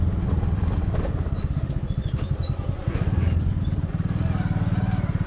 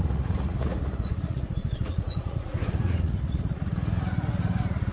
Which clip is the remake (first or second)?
second